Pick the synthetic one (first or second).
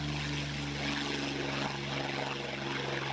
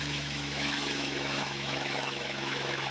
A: second